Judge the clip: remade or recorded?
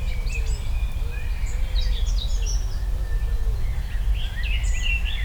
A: recorded